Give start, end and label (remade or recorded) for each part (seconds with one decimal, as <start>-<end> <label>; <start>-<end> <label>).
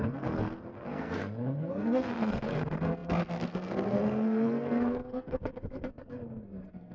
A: 0.0-6.9 remade